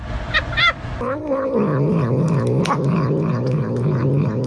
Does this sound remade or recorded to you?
recorded